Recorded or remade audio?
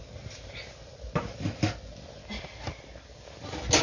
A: recorded